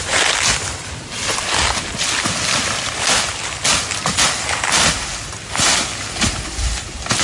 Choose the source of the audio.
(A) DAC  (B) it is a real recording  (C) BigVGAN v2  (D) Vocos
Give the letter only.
B